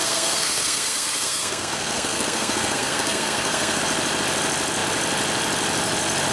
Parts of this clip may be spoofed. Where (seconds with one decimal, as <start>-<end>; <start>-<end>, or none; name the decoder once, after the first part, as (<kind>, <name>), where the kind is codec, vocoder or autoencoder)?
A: 0.0-3.8 (codec, SNAC)